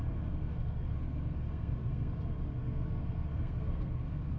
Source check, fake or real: fake